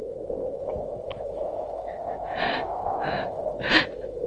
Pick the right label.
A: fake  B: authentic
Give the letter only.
A